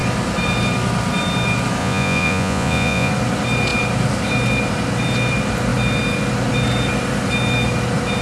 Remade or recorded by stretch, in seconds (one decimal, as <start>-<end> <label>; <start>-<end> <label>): 0.0-1.8 recorded; 1.8-3.1 remade; 3.1-8.2 recorded